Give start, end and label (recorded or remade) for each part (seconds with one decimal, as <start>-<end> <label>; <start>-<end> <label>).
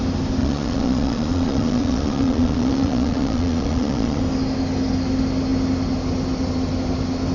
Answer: 0.0-0.4 recorded; 0.4-4.2 remade; 4.2-7.3 recorded